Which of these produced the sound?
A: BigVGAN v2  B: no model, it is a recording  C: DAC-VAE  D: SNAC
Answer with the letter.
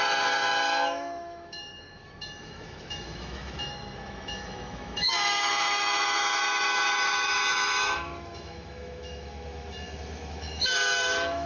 C